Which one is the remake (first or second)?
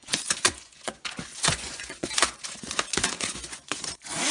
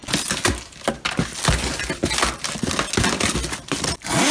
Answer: first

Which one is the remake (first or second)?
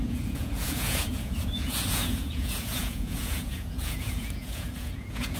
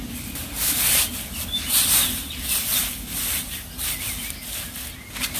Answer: first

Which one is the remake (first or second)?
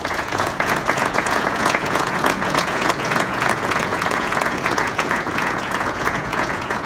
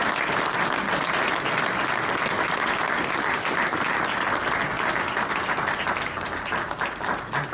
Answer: first